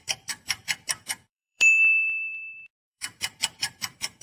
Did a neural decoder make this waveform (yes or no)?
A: yes